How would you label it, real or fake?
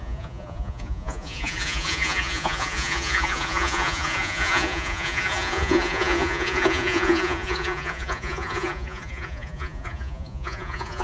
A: fake